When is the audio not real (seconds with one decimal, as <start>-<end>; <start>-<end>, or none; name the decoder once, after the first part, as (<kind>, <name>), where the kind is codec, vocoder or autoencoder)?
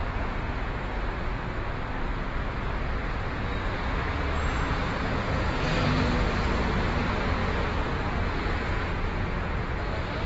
0.0-0.7 (vocoder, Vocos); 2.1-6.7; 7.4-9.7